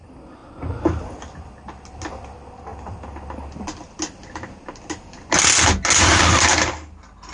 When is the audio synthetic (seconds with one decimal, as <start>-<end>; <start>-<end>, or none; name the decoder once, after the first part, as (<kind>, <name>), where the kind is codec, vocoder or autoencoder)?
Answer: none